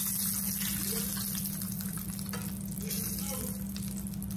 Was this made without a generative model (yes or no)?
yes